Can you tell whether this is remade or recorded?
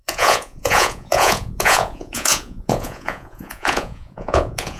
remade